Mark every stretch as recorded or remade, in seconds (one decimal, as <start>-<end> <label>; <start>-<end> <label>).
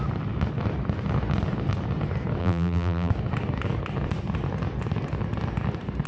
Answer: 0.0-2.4 recorded; 2.4-3.1 remade; 3.1-6.1 recorded